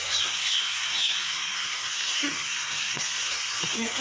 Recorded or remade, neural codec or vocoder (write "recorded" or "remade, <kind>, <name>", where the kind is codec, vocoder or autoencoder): remade, codec, SNAC